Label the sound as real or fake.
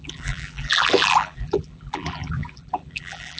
fake